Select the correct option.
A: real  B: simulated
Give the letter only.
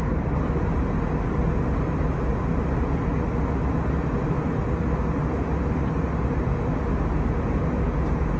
A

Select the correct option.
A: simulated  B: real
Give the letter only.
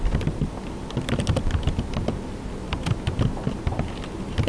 B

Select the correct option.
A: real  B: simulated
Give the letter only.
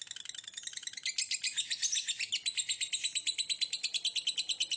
A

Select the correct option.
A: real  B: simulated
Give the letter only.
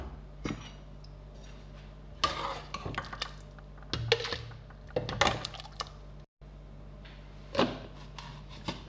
A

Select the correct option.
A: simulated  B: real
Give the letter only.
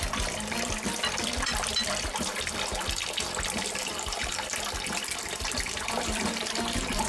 A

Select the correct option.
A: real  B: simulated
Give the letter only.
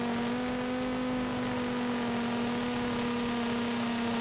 A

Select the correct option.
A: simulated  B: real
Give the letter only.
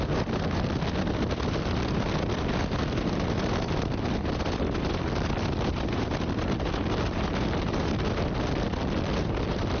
B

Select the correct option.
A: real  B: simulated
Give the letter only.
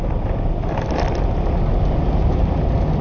A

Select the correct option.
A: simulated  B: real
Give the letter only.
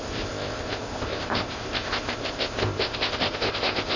A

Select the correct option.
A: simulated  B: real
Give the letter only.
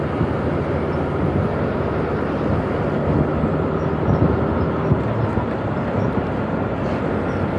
B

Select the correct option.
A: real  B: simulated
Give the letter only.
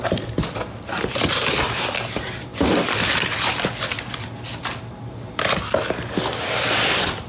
A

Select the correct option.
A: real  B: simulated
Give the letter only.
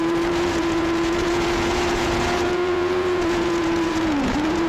B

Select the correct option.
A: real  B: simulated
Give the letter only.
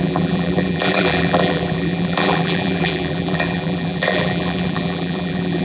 B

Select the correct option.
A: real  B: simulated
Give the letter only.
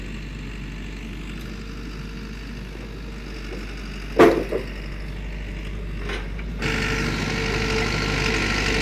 A